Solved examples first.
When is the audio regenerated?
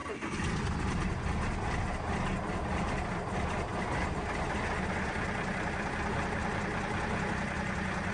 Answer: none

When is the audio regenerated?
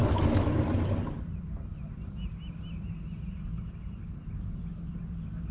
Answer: none